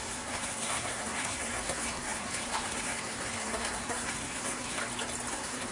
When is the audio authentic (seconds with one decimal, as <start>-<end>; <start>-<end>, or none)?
4.8-5.3